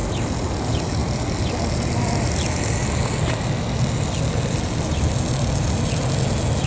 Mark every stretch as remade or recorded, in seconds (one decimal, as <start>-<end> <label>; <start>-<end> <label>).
0.0-6.7 recorded